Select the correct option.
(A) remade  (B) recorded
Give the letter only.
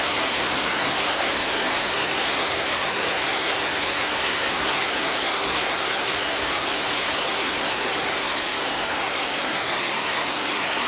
A